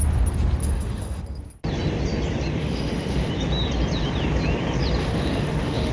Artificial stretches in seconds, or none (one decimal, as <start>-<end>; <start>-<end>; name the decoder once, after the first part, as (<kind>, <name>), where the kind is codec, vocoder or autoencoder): 0.6-1.2 (autoencoder, DAC-VAE); 2.6-3.3; 5.0-5.9